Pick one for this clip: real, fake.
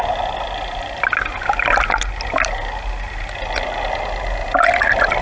real